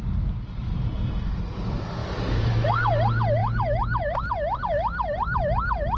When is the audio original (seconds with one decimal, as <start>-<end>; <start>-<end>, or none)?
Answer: 0.0-6.0